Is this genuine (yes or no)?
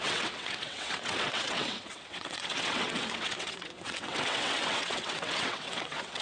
no